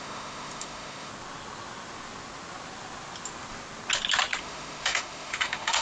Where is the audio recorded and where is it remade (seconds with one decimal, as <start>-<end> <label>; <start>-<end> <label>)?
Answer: 0.0-1.1 remade; 1.1-4.4 recorded; 4.4-5.8 remade